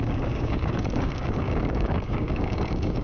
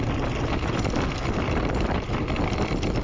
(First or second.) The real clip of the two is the second